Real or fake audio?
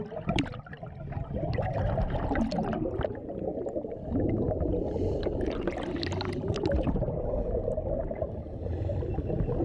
real